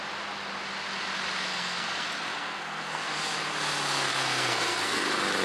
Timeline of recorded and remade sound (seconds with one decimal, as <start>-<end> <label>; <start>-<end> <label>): 0.0-1.5 recorded; 1.5-3.1 remade; 3.1-4.1 recorded; 4.1-5.0 remade; 5.0-5.4 recorded